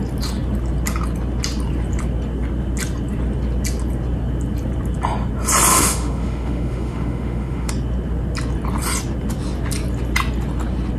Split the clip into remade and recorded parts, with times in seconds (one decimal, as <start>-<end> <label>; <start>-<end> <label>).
0.0-5.7 recorded; 5.7-7.7 remade; 7.7-11.0 recorded